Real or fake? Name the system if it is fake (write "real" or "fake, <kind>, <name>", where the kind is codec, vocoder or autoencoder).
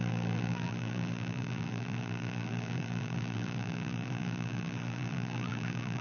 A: fake, vocoder, BigVGAN v2